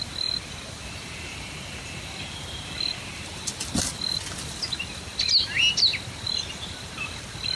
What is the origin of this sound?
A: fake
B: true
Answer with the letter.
B